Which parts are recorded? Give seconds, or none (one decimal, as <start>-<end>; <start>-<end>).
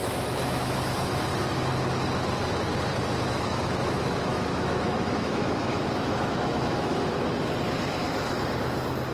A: 1.3-3.3; 6.9-9.1